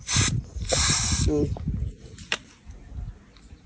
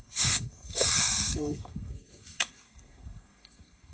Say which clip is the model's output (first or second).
second